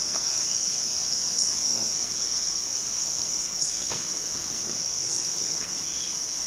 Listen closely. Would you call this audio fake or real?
fake